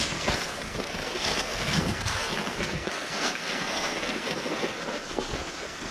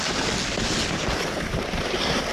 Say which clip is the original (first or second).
second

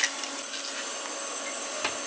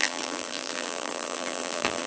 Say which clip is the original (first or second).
first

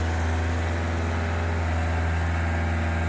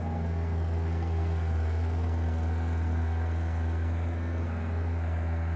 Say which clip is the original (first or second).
first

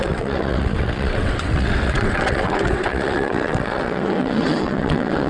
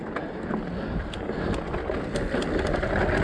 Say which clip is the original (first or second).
second